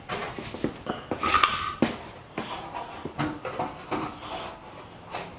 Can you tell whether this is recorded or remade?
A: recorded